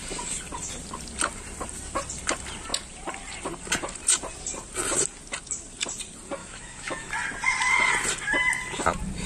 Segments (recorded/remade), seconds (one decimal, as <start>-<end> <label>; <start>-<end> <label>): 0.0-6.4 recorded; 6.4-7.1 remade; 7.1-9.3 recorded